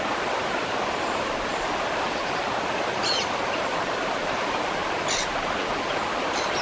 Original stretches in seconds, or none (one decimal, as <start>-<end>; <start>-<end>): 0.0-6.6